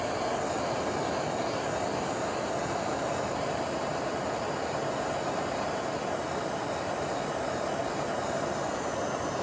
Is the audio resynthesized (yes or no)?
no